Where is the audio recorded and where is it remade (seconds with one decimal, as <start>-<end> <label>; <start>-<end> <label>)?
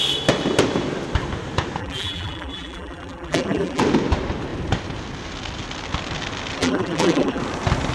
0.0-1.8 recorded; 1.8-3.8 remade; 3.8-6.6 recorded; 6.6-7.4 remade; 7.4-7.9 recorded